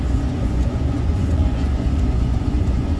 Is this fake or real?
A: fake